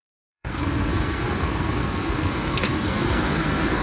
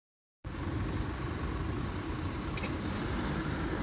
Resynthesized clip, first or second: first